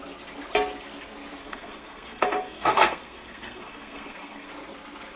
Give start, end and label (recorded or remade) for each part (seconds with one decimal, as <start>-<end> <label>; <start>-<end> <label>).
0.0-1.4 recorded; 1.4-4.5 remade; 4.5-5.2 recorded